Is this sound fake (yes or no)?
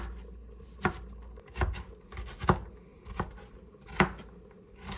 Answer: no